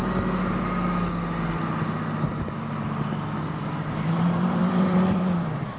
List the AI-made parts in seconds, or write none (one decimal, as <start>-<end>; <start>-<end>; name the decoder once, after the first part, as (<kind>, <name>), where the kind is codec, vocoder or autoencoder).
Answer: 3.5-5.8 (vocoder, BigVGAN v2)